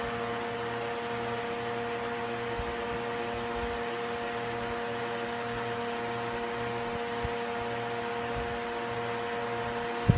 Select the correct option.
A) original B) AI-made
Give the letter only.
A